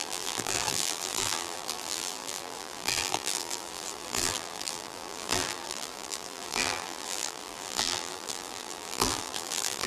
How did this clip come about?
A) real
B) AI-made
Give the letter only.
B